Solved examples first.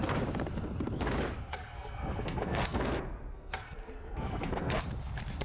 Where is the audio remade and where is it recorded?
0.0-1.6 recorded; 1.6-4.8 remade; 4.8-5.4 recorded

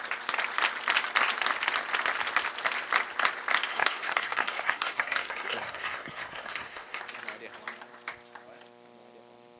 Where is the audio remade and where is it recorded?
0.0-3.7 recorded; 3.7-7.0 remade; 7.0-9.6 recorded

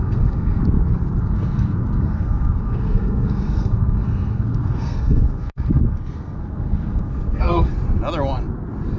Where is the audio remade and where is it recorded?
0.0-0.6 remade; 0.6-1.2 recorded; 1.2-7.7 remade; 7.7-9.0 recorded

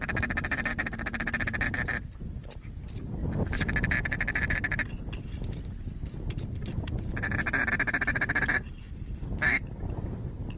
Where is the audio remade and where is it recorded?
0.0-10.6 recorded